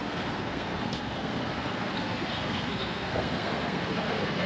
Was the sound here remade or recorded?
remade